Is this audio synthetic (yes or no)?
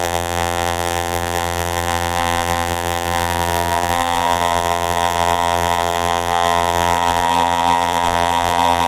yes